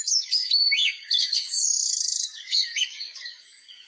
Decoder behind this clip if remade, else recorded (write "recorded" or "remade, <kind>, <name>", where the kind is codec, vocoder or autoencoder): remade, codec, DAC